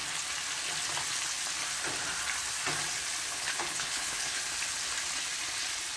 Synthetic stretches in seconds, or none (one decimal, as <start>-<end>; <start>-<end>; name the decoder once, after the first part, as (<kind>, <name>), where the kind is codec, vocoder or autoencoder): 3.3-4.4 (codec, HILCodec)